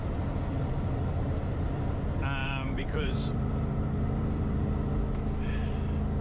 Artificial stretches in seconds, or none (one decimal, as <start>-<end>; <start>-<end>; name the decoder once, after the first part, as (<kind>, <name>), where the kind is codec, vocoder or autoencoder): 2.4-4.9 (vocoder, BigVGAN v2)